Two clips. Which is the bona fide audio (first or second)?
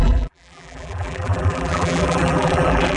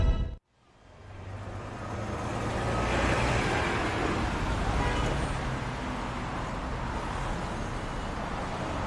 second